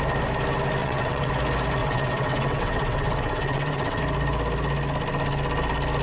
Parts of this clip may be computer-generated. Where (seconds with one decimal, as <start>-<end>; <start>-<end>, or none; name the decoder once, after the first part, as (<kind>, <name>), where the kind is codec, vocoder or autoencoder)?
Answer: 0.8-1.3 (vocoder, WaveNeXt); 1.8-4.0